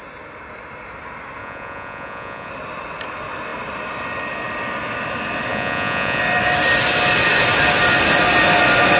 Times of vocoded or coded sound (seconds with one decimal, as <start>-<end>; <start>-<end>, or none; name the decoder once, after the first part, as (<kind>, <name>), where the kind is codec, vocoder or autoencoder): 1.4-2.5 (vocoder, Vocos); 5.5-6.2